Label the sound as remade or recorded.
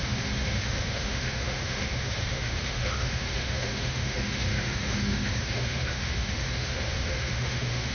remade